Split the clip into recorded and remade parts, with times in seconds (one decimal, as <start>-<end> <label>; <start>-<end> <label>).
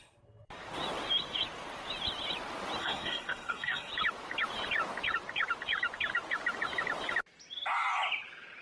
0.0-2.8 recorded; 2.8-3.9 remade; 3.9-8.6 recorded